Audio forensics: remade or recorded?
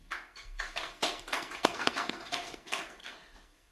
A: remade